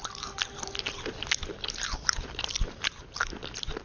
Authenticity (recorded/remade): recorded